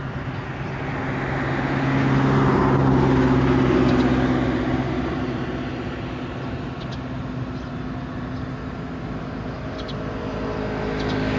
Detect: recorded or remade recorded